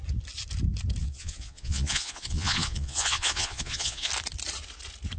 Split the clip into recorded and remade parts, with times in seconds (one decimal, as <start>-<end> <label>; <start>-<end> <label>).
0.0-1.0 recorded; 1.0-4.1 remade; 4.1-5.2 recorded